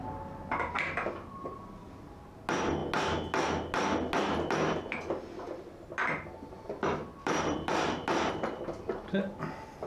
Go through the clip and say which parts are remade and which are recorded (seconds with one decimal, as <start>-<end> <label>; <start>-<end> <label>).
0.0-7.1 recorded; 7.1-8.3 remade; 8.3-9.9 recorded